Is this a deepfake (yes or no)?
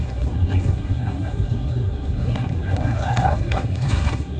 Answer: yes